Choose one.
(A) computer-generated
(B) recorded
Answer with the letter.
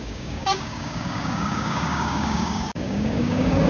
A